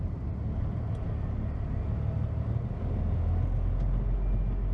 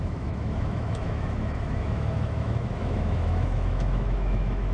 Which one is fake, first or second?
second